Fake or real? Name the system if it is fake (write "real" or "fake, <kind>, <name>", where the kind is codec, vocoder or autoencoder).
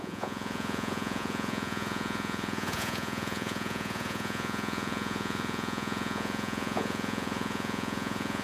fake, vocoder, Vocos